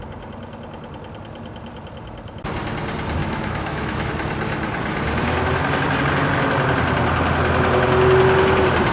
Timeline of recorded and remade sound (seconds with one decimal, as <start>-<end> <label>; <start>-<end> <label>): 0.0-3.2 recorded; 3.2-4.1 remade; 4.1-8.9 recorded